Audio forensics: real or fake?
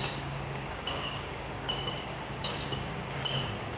fake